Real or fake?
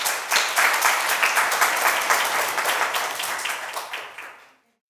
fake